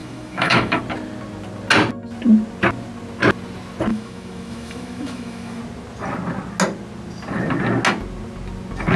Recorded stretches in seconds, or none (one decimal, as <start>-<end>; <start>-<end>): 0.8-3.9; 5.6-9.0